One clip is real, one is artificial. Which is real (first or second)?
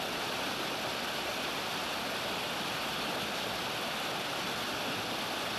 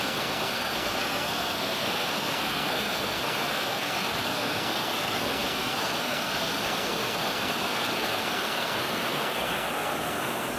first